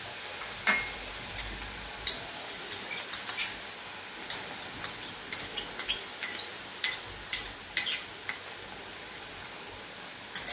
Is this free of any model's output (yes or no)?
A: yes